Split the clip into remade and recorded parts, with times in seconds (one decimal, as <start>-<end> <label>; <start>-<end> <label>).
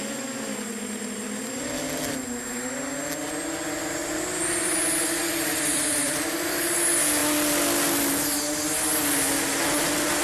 0.0-4.0 recorded; 4.0-6.7 remade; 6.7-10.2 recorded